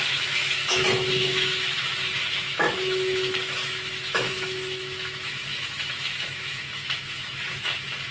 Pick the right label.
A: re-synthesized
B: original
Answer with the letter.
A